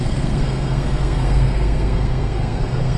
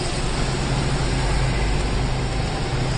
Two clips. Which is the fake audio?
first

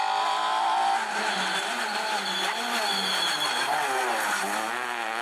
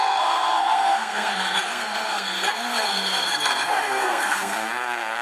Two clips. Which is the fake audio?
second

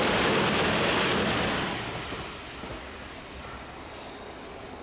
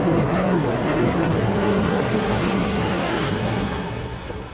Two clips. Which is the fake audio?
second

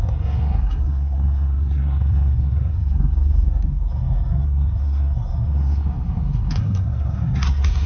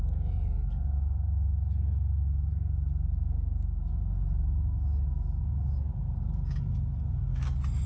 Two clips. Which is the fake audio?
first